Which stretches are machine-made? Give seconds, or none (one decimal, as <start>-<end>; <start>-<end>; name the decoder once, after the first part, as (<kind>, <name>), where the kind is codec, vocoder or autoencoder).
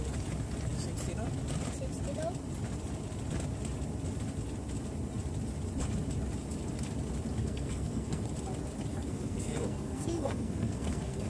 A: 7.4-8.2 (codec, SNAC); 8.9-11.3